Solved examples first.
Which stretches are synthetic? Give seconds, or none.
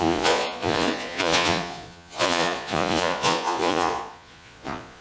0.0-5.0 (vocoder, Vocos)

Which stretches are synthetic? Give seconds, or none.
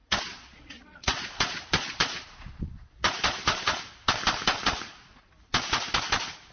0.0-3.8 (vocoder, Vocos); 4.5-5.3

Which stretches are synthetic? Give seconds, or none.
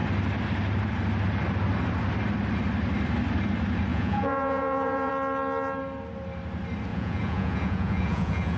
3.9-5.1 (vocoder, Vocos); 6.9-8.6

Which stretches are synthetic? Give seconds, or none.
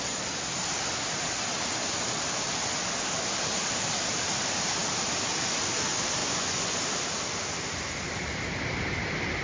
6.2-6.8 (vocoder, Vocos)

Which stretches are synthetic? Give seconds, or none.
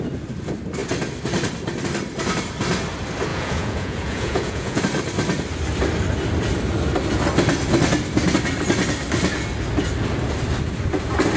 3.3-4.8 (vocoder, Vocos)